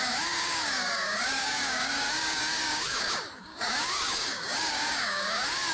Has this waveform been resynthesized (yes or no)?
yes